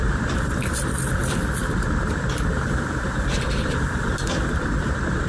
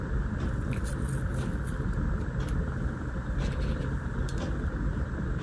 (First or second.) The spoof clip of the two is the first